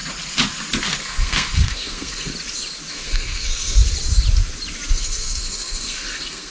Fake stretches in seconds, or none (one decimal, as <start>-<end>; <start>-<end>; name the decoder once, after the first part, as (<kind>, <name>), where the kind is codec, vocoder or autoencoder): 1.0-2.3 (codec, SNAC); 2.9-3.8; 4.9-6.5